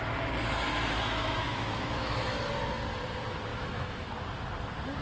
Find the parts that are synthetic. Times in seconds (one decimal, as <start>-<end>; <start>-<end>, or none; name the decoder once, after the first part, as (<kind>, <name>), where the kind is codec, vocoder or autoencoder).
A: 0.7-2.3 (autoencoder, DAC-VAE); 3.5-4.2